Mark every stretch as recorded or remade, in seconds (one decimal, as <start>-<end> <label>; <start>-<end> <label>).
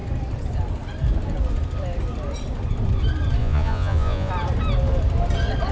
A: 0.0-3.4 recorded; 3.4-4.3 remade; 4.3-5.7 recorded